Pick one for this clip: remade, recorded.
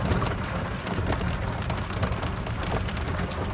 recorded